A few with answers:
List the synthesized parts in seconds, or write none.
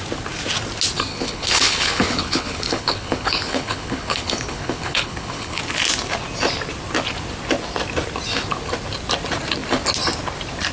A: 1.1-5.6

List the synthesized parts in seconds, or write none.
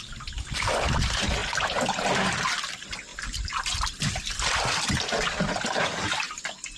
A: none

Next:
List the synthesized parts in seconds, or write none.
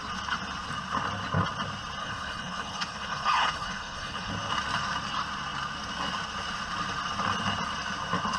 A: 2.0-4.3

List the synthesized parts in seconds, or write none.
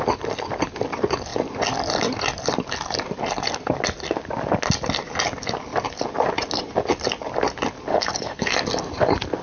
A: 7.9-8.5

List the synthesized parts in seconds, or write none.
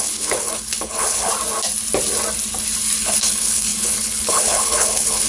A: 0.0-1.3; 3.0-5.3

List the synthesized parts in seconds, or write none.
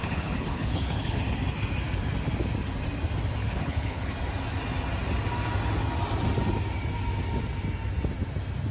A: 0.0-1.2; 3.4-4.1